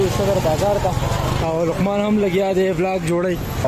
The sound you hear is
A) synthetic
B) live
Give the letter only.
B